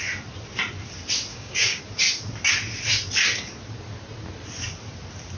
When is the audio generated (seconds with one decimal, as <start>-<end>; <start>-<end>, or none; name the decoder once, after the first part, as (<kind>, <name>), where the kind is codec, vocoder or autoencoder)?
1.3-1.8 (codec, DAC)